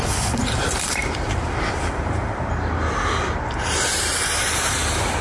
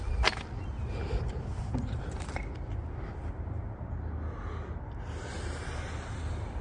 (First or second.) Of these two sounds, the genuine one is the second